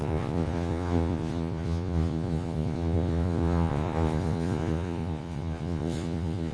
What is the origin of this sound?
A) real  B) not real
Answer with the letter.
B